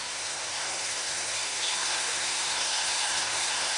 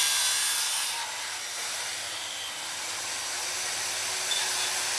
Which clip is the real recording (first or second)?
second